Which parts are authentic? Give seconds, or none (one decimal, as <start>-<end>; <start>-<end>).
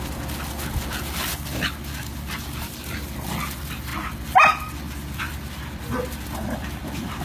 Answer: 0.0-3.9